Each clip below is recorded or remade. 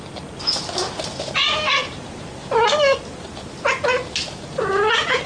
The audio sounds recorded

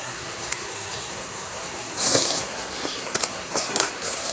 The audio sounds remade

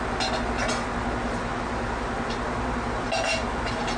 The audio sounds recorded